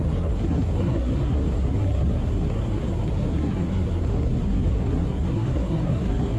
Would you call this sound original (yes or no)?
no